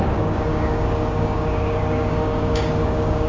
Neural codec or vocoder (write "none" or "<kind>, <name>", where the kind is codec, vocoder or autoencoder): codec, DAC